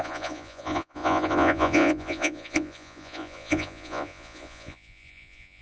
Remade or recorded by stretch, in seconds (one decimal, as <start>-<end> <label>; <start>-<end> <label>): 0.0-5.6 remade